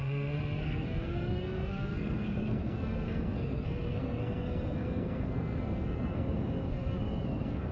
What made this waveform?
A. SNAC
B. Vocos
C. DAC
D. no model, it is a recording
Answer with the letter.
A